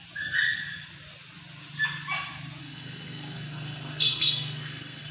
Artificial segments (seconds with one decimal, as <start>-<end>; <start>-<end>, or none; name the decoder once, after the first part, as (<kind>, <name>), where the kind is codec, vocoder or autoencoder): 2.6-5.1 (codec, SNAC)